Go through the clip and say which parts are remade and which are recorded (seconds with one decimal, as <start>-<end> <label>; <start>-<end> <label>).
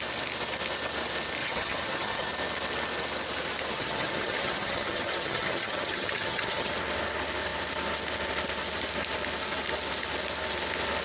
0.0-1.4 recorded; 1.4-2.3 remade; 2.3-3.7 recorded; 3.7-6.7 remade; 6.7-11.0 recorded